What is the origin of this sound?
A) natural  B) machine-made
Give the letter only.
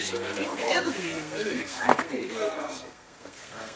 B